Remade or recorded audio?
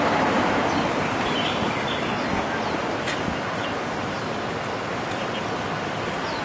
recorded